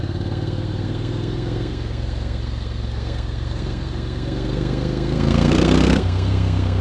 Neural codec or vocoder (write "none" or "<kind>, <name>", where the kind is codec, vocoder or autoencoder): codec, SNAC